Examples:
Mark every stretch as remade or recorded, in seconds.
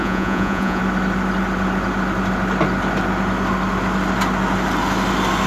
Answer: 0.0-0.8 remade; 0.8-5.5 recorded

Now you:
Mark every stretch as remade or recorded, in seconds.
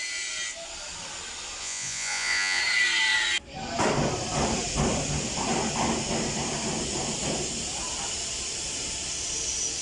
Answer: 0.0-1.6 recorded; 1.6-2.6 remade; 2.6-9.8 recorded